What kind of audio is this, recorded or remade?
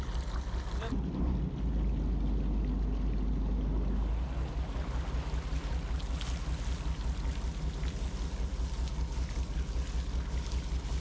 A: recorded